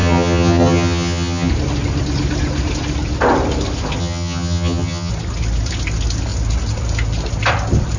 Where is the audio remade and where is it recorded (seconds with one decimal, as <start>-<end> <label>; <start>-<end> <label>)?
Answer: 0.0-1.5 remade; 1.5-4.0 recorded; 4.0-5.1 remade; 5.1-8.0 recorded